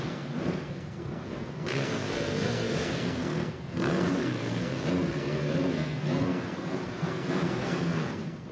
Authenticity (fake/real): fake